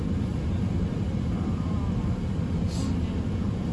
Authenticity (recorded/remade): recorded